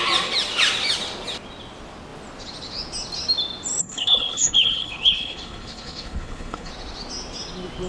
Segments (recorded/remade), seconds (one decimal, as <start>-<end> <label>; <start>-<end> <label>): 0.0-3.8 recorded; 3.8-6.7 remade; 6.7-7.9 recorded

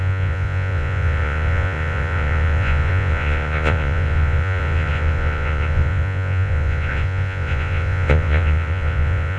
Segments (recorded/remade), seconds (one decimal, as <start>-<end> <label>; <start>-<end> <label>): 0.0-9.4 remade

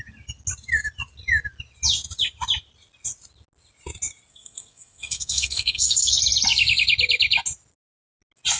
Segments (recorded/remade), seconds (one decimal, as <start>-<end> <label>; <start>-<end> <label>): 0.0-4.3 recorded; 4.3-6.2 remade; 6.2-8.6 recorded

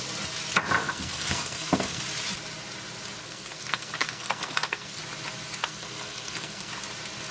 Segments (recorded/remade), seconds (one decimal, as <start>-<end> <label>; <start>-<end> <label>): 0.0-0.8 recorded; 0.8-2.0 remade; 2.0-3.2 recorded; 3.2-5.0 remade; 5.0-5.6 recorded; 5.6-6.7 remade; 6.7-7.3 recorded